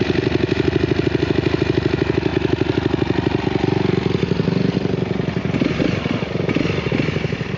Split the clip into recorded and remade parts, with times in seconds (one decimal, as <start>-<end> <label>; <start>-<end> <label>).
0.0-7.6 recorded